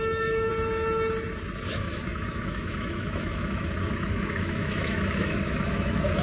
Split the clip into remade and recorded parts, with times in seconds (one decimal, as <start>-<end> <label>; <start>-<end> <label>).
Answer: 0.0-0.5 remade; 0.5-1.7 recorded; 1.7-6.2 remade